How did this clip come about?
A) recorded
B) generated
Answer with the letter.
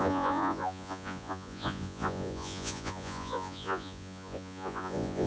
B